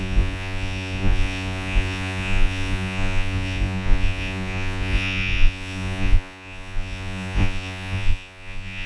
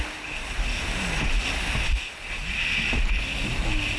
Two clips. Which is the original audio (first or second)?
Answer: second